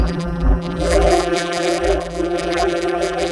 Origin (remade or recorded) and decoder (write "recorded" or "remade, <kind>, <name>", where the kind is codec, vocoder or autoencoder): remade, vocoder, BigVGAN v2